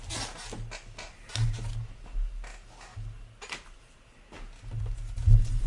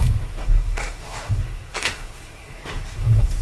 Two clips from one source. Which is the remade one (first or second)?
second